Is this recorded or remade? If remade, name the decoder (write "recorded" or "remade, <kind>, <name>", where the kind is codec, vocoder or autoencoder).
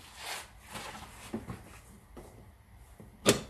recorded